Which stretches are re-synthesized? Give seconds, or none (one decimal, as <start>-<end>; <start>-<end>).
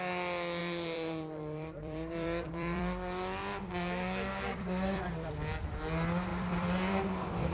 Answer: 0.6-5.1; 6.3-7.0